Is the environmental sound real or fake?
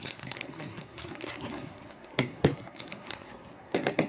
fake